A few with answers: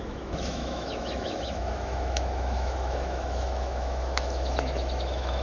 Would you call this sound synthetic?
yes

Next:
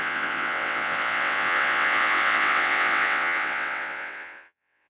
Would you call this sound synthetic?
yes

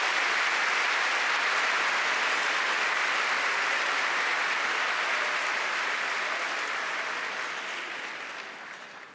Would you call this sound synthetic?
no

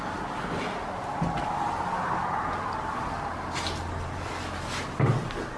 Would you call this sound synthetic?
no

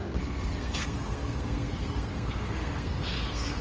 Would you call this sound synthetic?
yes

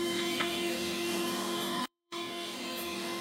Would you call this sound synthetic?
yes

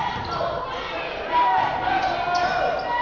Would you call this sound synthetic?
no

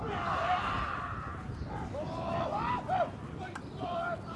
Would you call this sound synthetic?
no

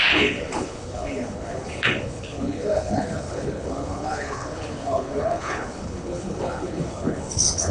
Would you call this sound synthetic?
yes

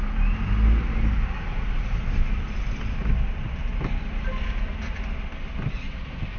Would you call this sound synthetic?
no